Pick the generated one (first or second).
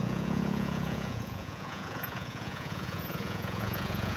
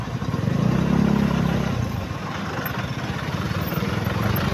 first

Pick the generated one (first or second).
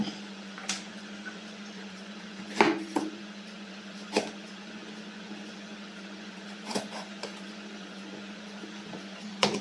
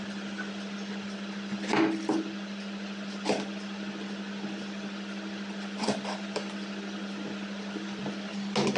first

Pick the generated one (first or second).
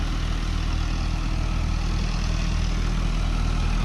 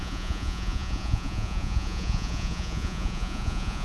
second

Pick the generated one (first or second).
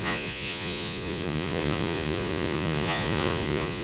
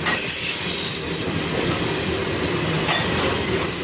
first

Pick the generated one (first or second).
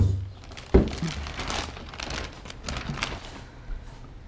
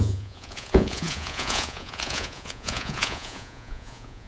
second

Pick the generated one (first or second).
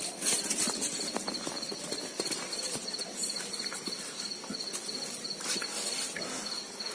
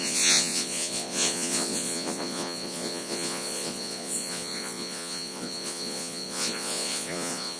second